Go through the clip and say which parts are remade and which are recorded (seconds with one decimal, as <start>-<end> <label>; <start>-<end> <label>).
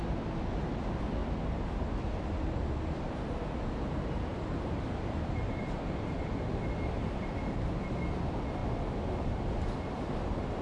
0.0-4.3 recorded; 4.3-6.5 remade; 6.5-10.6 recorded